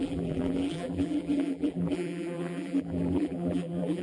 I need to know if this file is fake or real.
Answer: fake